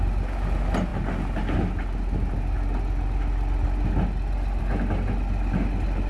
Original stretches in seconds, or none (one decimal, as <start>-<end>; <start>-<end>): 0.0-6.1